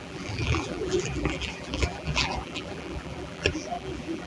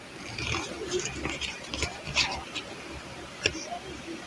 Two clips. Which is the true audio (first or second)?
second